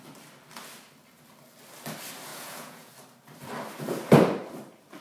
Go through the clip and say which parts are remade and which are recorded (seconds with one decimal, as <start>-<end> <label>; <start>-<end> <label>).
0.0-2.3 recorded; 2.3-2.9 remade; 2.9-5.0 recorded